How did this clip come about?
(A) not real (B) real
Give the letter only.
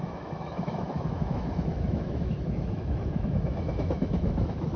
A